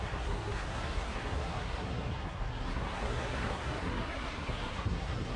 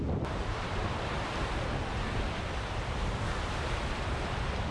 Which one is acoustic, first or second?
second